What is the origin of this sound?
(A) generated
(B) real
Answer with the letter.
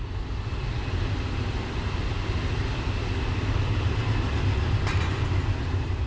B